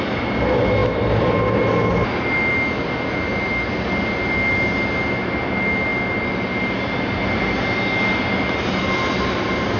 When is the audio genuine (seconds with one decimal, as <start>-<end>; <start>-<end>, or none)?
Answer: 0.0-9.8